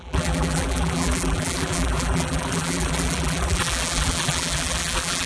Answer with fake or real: fake